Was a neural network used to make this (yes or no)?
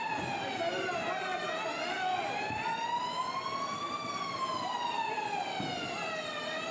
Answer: no